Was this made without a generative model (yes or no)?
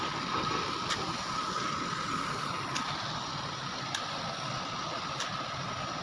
yes